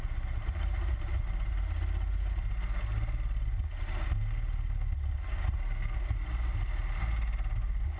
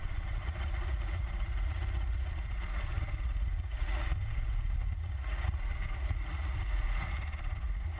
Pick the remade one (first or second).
second